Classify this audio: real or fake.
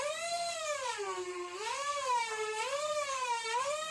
fake